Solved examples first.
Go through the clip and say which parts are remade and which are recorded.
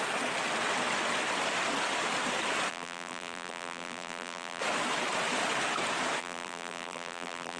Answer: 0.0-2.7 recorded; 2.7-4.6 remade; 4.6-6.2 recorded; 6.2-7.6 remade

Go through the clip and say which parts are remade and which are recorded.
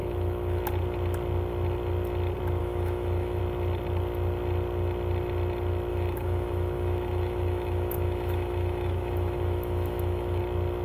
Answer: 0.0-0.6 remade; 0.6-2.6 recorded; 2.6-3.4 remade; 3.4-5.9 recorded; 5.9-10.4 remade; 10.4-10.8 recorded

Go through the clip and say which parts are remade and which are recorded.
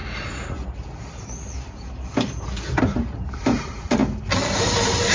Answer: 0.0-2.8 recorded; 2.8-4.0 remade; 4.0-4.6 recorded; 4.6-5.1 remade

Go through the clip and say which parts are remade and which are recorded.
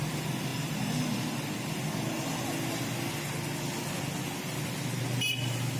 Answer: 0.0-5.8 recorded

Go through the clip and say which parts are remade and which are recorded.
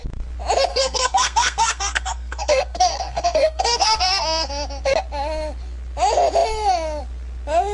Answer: 0.0-0.7 recorded; 0.7-4.5 remade; 4.5-7.7 recorded